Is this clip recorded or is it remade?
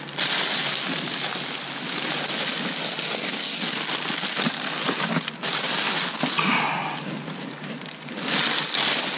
recorded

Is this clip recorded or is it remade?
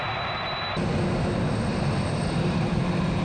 recorded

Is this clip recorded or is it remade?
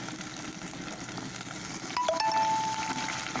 recorded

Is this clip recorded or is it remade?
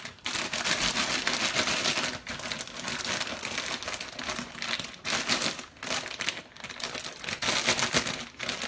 recorded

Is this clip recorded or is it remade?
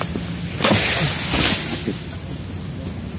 recorded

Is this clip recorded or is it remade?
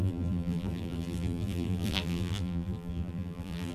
remade